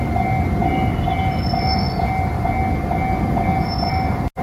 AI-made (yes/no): no